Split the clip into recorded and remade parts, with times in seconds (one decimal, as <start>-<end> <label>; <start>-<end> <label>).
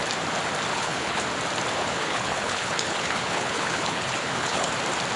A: 0.0-0.7 recorded; 0.7-1.2 remade; 1.2-1.8 recorded; 1.8-4.7 remade; 4.7-5.2 recorded